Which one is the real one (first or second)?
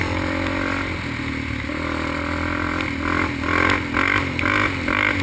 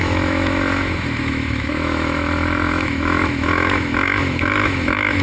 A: first